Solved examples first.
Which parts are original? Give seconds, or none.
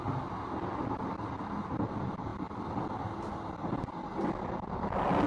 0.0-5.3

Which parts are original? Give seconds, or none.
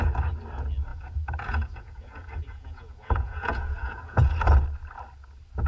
0.0-0.9; 4.3-5.7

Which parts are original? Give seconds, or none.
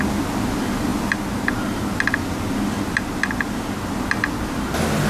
0.0-5.1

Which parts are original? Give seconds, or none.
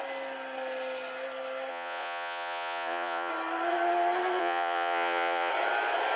0.0-1.7; 3.3-4.4; 5.5-6.2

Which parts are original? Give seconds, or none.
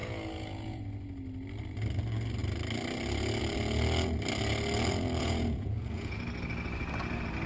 0.8-5.2; 6.2-7.5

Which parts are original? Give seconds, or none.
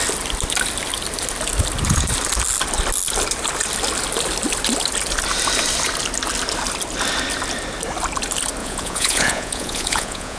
0.0-8.6